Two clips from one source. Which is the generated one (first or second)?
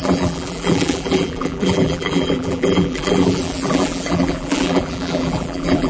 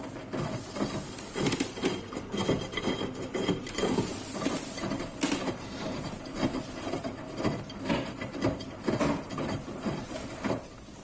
first